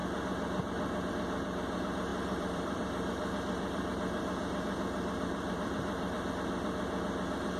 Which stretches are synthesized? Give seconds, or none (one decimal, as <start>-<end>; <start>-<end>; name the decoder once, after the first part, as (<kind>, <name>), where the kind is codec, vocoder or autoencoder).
2.1-6.3 (vocoder, BigVGAN v2)